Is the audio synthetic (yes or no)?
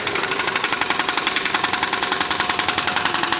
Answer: yes